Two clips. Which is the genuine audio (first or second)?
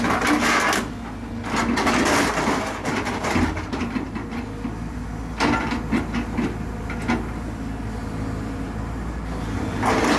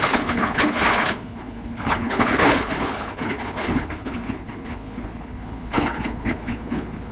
first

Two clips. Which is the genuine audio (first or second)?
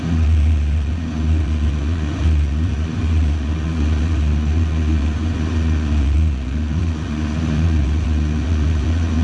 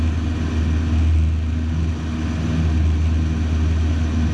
second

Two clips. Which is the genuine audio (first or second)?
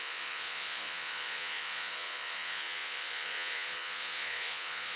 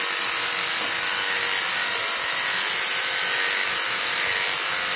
second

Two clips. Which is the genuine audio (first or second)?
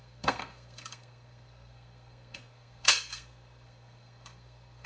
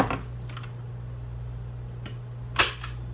second